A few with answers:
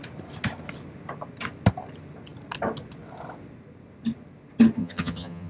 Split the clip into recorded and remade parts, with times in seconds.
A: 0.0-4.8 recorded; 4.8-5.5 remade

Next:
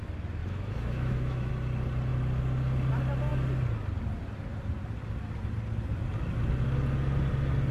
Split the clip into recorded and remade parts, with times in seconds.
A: 0.0-0.4 recorded; 0.4-1.5 remade; 1.5-7.7 recorded

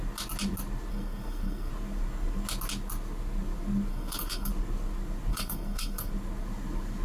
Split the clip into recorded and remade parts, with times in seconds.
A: 0.0-0.9 recorded; 0.9-1.7 remade; 1.7-3.9 recorded; 3.9-4.5 remade; 4.5-5.3 recorded; 5.3-6.1 remade; 6.1-7.0 recorded

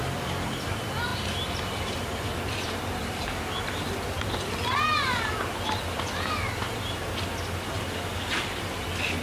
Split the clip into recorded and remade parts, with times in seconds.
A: 0.0-1.1 recorded; 1.1-3.5 remade; 3.5-9.2 recorded

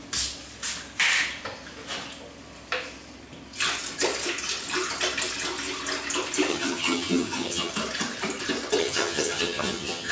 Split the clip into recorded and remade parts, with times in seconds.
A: 0.0-6.5 recorded; 6.5-7.7 remade; 7.7-8.8 recorded; 8.8-10.1 remade